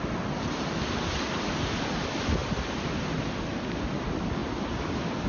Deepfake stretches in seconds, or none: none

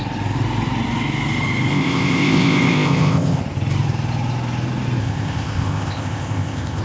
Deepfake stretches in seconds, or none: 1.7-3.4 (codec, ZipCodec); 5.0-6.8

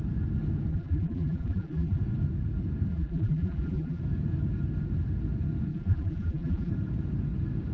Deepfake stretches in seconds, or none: 0.7-2.0 (vocoder, BigVGAN v2); 2.9-4.0; 5.7-6.7

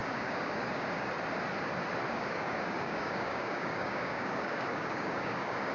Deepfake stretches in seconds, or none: 0.0-1.1 (codec, DAC); 2.1-5.7